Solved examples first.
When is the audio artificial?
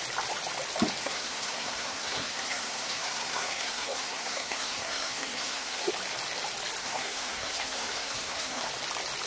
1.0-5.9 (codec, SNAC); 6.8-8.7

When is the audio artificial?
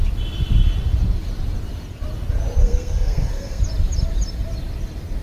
2.6-3.6 (codec, SNAC)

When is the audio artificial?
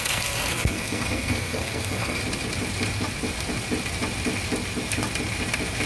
0.0-2.2 (codec, SNAC)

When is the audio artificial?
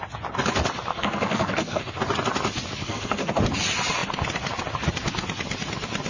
0.9-1.8 (codec, SNAC); 2.8-3.3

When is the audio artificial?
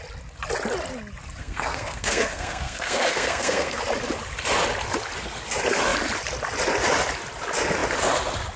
1.4-3.8 (codec, SNAC)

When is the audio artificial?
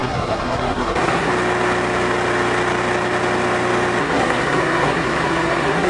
0.0-1.3 (codec, SNAC); 4.0-5.9